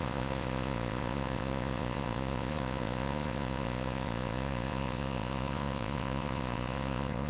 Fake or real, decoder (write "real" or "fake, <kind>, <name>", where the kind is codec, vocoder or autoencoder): fake, vocoder, Vocos